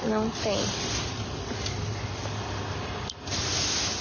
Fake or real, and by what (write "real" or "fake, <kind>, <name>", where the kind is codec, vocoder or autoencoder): real